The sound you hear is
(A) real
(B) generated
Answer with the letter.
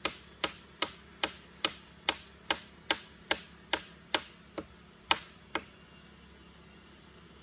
A